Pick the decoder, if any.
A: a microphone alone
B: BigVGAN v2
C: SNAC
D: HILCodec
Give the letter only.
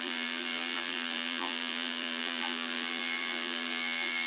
B